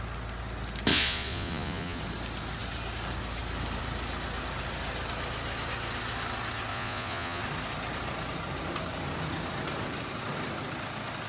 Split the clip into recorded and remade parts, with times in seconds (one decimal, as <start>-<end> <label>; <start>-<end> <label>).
0.0-0.9 recorded; 0.9-2.0 remade; 2.0-6.7 recorded; 6.7-7.4 remade; 7.4-11.3 recorded